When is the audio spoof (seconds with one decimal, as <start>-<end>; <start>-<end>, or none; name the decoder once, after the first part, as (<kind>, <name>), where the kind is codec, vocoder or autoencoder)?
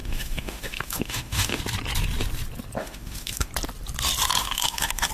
0.0-1.6 (autoencoder, DAC-VAE); 2.8-3.5; 4.4-5.1